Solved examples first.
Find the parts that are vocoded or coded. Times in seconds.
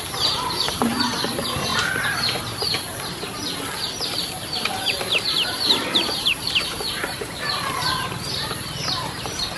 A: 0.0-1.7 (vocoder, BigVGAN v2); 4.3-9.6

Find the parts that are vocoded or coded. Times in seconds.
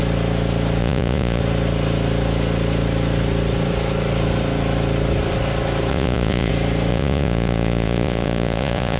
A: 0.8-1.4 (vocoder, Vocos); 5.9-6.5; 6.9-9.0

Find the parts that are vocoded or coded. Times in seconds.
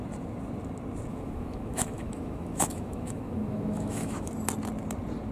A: 1.1-4.3 (autoencoder, DAC-VAE)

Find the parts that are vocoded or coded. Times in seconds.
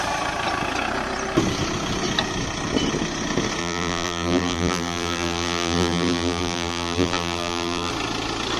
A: 3.6-7.9 (vocoder, BigVGAN v2)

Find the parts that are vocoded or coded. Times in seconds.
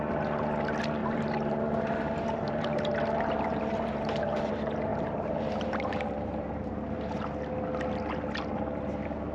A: 1.0-4.5 (vocoder, BigVGAN v2); 4.9-7.2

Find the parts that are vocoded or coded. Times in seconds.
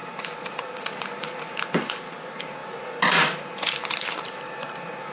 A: 0.0-5.1 (vocoder, BigVGAN v2)